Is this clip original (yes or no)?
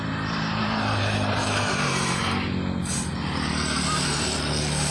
no